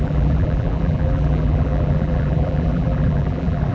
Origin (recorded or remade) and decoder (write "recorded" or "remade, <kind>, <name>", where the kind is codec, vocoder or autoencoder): remade, vocoder, BigVGAN v2